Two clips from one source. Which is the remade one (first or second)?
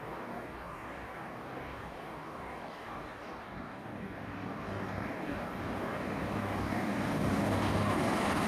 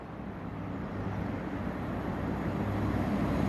first